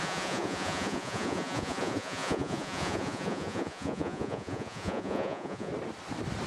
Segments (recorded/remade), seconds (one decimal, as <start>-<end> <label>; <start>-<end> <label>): 0.0-5.7 remade; 5.7-6.5 recorded